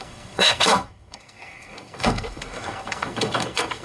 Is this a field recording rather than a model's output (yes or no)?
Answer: no